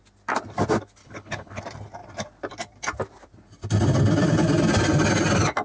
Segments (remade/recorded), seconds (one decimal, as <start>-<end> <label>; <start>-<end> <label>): 0.0-1.0 recorded; 1.0-1.6 remade; 1.6-5.6 recorded